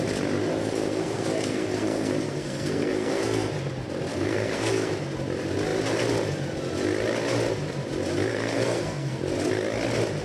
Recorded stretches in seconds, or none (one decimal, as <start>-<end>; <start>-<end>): 0.0-0.5; 3.5-4.1; 4.9-8.3; 9.2-10.2